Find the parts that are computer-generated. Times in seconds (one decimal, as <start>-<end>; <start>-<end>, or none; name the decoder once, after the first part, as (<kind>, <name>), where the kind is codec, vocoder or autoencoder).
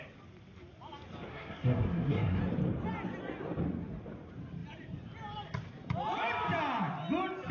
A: 1.3-2.4 (codec, SNAC)